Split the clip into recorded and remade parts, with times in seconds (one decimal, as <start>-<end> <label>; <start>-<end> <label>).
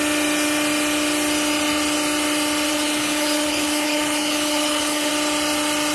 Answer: 0.0-2.7 recorded; 2.7-5.1 remade; 5.1-5.9 recorded